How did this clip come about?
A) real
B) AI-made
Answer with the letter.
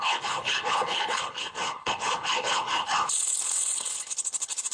B